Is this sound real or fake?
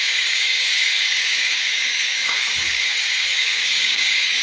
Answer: fake